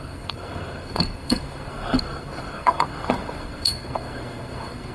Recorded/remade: remade